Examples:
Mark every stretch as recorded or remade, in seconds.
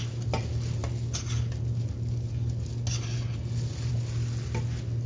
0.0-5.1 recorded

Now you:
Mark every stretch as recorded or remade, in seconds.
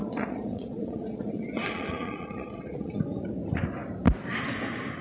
0.0-3.0 remade; 3.0-5.0 recorded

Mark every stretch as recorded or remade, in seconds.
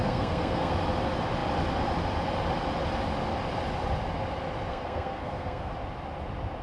0.0-0.7 remade; 0.7-4.7 recorded; 4.7-5.7 remade; 5.7-6.6 recorded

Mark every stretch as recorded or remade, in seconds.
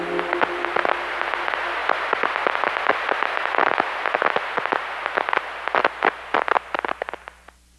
0.0-7.8 recorded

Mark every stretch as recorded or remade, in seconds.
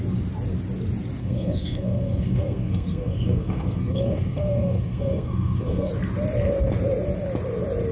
0.0-1.2 recorded; 1.2-5.9 remade; 5.9-7.9 recorded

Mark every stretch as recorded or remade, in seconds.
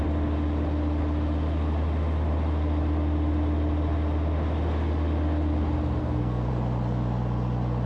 0.0-6.0 recorded; 6.0-6.5 remade; 6.5-7.9 recorded